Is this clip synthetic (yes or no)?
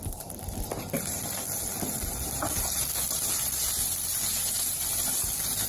no